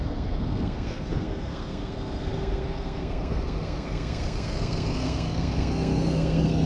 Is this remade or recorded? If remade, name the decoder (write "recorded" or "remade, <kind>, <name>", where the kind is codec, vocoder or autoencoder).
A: remade, codec, SNAC